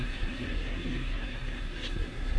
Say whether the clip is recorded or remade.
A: remade